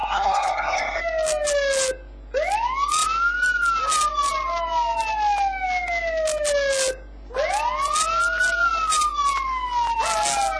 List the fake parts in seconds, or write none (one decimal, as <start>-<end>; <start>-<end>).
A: 0.0-1.0